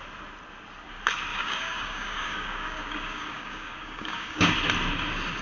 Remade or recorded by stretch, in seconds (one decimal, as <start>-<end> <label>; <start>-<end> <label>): 0.0-1.3 recorded; 1.3-4.5 remade; 4.5-5.4 recorded